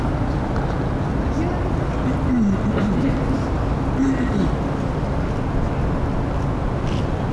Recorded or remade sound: recorded